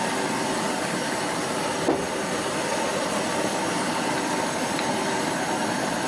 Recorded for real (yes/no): no